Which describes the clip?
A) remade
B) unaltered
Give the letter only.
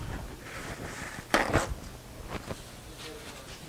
B